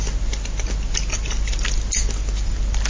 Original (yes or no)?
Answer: yes